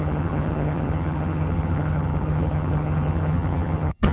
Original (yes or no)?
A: no